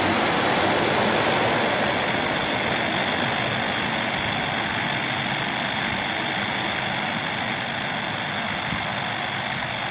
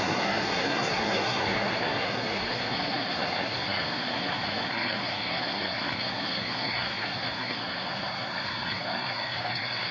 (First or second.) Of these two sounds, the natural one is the first